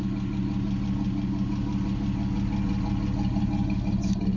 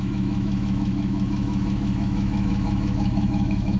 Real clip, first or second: first